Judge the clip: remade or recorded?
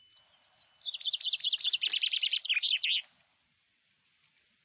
recorded